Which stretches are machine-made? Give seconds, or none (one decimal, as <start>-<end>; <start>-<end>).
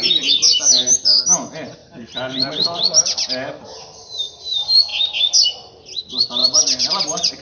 6.4-7.4